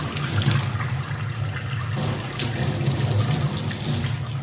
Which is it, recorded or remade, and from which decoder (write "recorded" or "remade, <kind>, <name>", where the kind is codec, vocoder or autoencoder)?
recorded